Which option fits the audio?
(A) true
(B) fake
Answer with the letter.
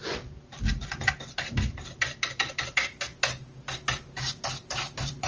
A